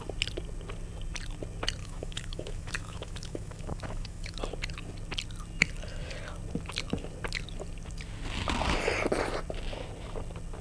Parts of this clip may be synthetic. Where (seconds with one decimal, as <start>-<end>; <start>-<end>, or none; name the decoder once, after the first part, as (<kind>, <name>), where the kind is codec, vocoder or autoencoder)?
1.8-4.4 (autoencoder, DAC-VAE)